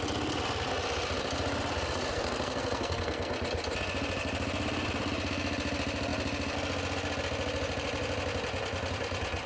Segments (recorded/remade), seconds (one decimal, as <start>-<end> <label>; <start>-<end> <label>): 0.0-2.1 recorded; 2.1-3.3 remade; 3.3-9.5 recorded